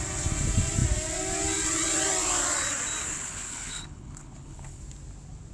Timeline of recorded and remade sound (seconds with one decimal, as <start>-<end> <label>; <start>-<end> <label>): 0.0-3.0 recorded; 3.0-4.8 remade; 4.8-5.5 recorded